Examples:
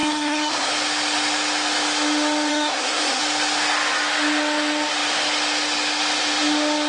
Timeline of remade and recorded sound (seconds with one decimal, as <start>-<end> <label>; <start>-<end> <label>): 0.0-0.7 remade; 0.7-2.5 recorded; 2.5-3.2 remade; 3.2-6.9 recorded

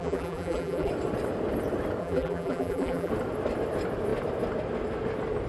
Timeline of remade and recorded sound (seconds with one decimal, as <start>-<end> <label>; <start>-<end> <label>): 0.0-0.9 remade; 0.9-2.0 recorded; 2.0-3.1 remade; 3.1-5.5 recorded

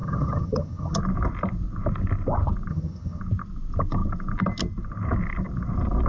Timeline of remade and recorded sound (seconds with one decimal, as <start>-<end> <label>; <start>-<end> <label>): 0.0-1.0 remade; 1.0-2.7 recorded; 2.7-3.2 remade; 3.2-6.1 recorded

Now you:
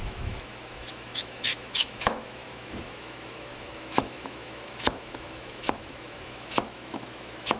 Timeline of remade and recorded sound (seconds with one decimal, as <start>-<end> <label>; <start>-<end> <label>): 0.0-7.6 remade